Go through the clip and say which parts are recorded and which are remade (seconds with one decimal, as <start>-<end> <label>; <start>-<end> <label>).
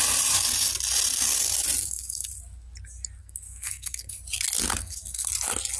0.0-1.8 recorded; 1.8-2.3 remade; 2.3-3.2 recorded; 3.2-4.2 remade; 4.2-4.7 recorded; 4.7-5.3 remade; 5.3-5.8 recorded